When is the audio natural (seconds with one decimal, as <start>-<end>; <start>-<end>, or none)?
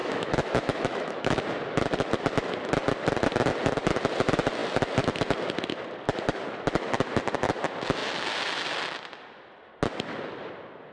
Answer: 1.4-10.9